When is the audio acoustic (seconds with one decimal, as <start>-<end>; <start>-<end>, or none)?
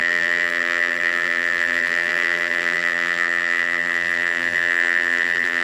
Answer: none